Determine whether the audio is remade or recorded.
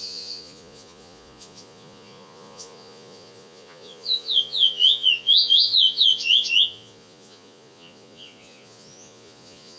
remade